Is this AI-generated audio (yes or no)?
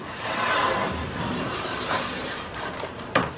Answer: yes